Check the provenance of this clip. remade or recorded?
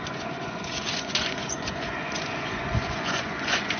remade